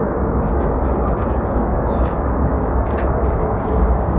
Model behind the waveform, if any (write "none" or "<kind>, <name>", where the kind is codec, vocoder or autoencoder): codec, DAC